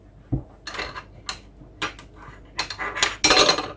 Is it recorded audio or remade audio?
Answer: recorded